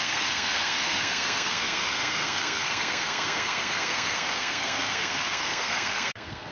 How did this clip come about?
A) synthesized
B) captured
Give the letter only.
A